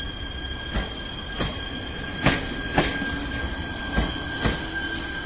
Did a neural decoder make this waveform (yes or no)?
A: no